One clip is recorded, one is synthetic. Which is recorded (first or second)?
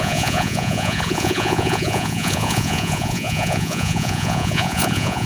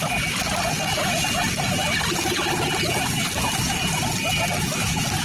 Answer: second